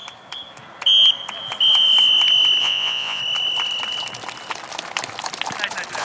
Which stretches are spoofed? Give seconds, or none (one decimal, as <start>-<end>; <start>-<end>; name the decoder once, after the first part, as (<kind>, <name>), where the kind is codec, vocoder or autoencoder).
2.6-3.2 (vocoder, Vocos)